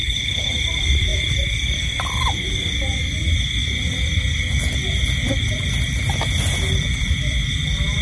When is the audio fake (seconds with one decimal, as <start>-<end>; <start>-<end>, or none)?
0.0-0.5